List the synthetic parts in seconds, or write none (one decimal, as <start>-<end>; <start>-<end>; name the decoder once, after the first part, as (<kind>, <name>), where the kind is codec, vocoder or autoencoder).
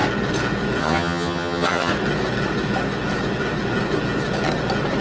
0.8-1.9 (vocoder, HiFi-GAN)